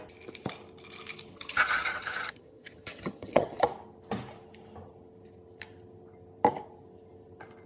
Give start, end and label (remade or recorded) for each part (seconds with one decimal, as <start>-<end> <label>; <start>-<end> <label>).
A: 0.0-1.3 recorded; 1.3-3.6 remade; 3.6-7.7 recorded